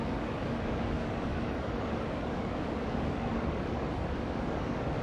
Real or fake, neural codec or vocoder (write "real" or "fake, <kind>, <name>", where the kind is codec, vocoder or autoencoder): fake, codec, DAC